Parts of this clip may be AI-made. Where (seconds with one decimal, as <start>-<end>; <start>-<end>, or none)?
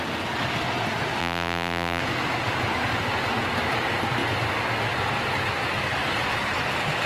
1.2-2.0